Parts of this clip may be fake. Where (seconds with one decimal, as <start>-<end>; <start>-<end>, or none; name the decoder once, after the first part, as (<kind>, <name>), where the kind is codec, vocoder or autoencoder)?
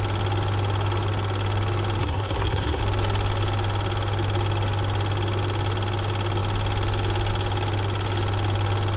2.0-2.8 (codec, SNAC)